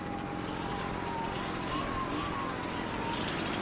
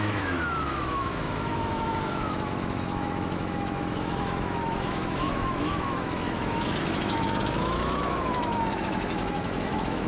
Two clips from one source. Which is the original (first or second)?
first